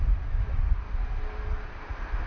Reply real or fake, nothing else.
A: real